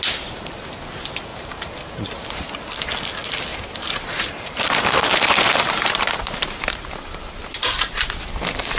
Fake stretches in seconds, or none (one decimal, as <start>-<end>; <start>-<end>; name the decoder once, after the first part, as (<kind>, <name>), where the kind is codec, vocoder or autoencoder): 1.3-2.4 (vocoder, BigVGAN v2); 3.5-7.3